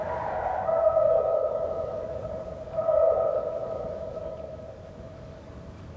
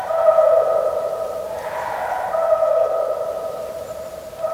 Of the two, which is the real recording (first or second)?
second